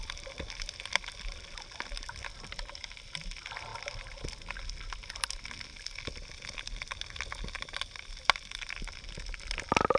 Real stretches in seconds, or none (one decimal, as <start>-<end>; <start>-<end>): 0.0-10.0